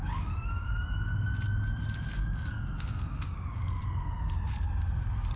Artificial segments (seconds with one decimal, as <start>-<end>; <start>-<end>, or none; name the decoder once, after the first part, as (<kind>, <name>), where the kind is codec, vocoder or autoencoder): 0.0-1.1 (codec, DAC); 2.2-3.8